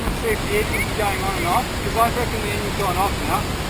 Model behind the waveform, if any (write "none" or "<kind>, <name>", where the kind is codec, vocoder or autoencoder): none